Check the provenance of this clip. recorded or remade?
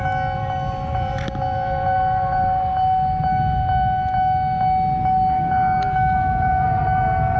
recorded